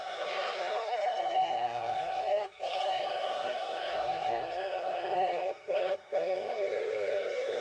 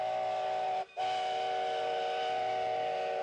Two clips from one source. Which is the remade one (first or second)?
first